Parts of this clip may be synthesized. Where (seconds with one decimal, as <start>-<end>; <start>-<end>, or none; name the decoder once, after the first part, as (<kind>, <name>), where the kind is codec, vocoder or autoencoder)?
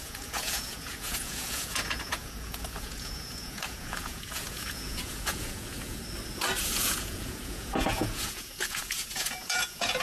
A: 0.0-6.0 (vocoder, Vocos); 6.6-10.0